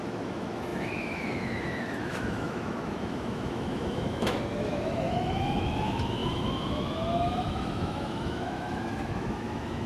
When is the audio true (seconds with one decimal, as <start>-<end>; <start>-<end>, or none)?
none